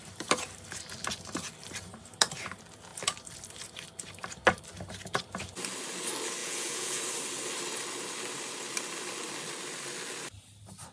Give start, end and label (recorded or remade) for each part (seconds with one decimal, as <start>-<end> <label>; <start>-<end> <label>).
0.0-6.4 recorded; 6.4-7.0 remade; 7.0-10.9 recorded